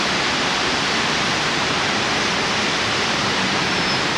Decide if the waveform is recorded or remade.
remade